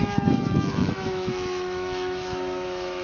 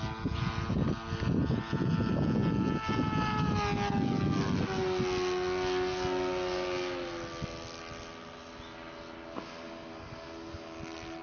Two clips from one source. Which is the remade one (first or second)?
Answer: first